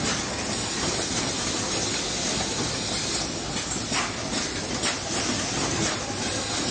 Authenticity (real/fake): real